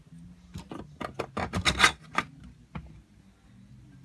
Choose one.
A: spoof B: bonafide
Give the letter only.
B